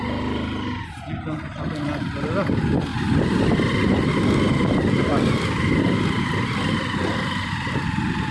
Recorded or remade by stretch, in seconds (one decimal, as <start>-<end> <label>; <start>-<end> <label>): 0.0-2.9 recorded; 2.9-3.5 remade; 3.5-5.1 recorded; 5.1-6.2 remade; 6.2-8.3 recorded